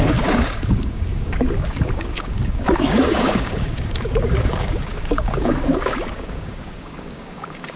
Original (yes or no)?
no